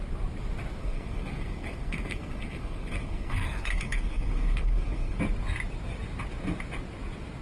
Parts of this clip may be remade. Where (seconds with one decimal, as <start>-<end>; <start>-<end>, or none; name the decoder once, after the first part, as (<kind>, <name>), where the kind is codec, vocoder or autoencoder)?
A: 0.8-5.2 (codec, SNAC)